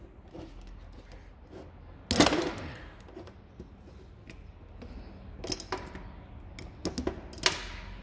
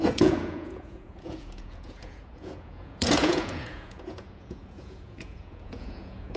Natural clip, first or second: first